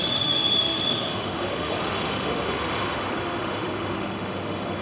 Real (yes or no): no